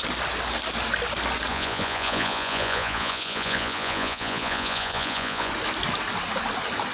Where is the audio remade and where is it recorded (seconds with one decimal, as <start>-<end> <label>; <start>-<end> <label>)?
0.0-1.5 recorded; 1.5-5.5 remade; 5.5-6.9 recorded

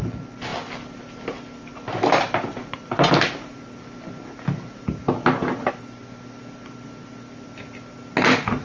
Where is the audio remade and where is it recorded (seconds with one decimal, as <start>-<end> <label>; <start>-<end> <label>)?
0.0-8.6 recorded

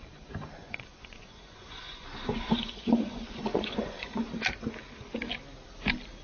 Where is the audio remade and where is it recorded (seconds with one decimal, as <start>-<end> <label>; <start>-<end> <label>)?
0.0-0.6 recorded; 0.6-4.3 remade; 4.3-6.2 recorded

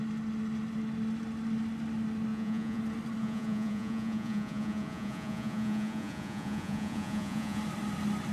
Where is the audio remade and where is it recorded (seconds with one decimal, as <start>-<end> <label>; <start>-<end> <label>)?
0.0-2.3 recorded; 2.3-2.8 remade; 2.8-3.2 recorded; 3.2-7.6 remade; 7.6-8.3 recorded

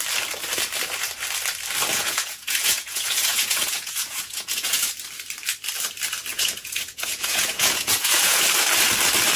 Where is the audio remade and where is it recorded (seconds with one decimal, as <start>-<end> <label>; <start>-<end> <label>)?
0.0-1.9 recorded; 1.9-4.9 remade; 4.9-6.3 recorded; 6.3-8.4 remade; 8.4-9.4 recorded

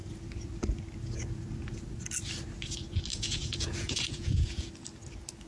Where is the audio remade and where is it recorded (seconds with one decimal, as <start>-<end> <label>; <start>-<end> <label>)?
0.0-3.1 recorded; 3.1-4.7 remade; 4.7-5.5 recorded

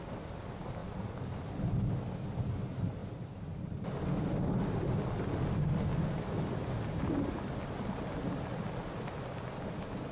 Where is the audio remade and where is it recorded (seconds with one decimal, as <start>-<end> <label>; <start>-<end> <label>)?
0.0-10.1 recorded

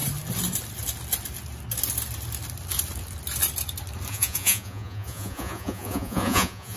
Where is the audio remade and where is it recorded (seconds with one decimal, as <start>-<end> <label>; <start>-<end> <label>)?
0.0-4.1 recorded; 4.1-6.8 remade